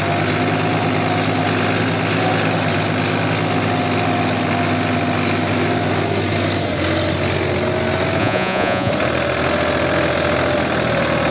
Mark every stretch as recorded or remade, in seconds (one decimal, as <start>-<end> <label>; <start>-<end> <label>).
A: 0.0-8.2 recorded; 8.2-8.9 remade; 8.9-11.3 recorded